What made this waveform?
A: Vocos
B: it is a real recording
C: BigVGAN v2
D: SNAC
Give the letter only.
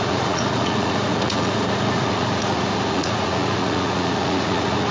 A